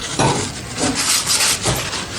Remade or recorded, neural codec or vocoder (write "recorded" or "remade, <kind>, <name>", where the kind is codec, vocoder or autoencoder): recorded